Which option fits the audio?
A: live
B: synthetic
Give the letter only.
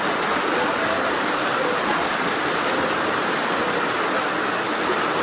A